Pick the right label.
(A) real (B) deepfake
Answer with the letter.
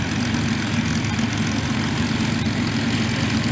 A